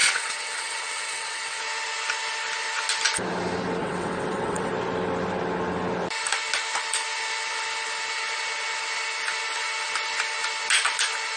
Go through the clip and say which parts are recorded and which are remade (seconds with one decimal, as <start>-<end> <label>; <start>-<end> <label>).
0.0-1.6 remade; 1.6-3.8 recorded; 3.8-4.7 remade; 4.7-11.4 recorded